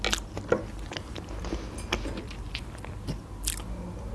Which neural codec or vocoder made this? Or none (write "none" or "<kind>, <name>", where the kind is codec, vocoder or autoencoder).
none